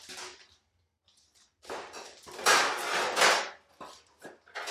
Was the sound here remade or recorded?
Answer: recorded